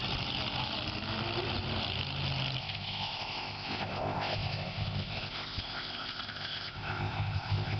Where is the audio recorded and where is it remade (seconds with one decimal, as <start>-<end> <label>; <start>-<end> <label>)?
0.0-2.6 recorded; 2.6-7.8 remade